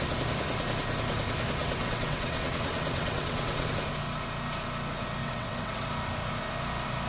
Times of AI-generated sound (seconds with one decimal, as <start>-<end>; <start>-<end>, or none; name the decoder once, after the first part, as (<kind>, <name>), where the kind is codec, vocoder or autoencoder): 1.6-3.7 (vocoder, WaveNeXt); 5.2-5.9